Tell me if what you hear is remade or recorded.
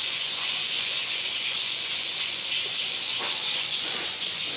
remade